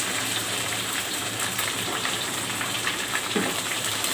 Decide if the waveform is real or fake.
fake